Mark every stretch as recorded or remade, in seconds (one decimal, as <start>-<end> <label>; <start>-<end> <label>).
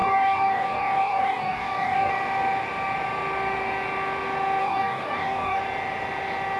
0.0-2.1 remade; 2.1-4.6 recorded; 4.6-5.6 remade; 5.6-6.6 recorded